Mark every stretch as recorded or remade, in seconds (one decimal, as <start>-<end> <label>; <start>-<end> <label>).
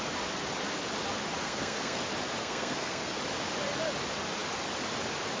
0.0-1.4 recorded; 1.4-2.0 remade; 2.0-2.4 recorded; 2.4-3.2 remade; 3.2-5.4 recorded